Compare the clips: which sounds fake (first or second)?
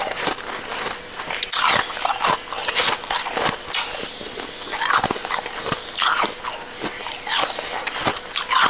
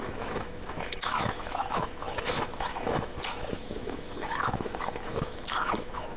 second